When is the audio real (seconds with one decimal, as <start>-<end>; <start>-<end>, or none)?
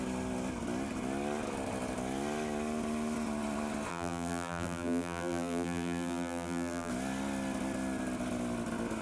0.0-3.9; 6.9-9.0